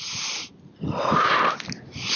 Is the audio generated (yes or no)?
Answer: no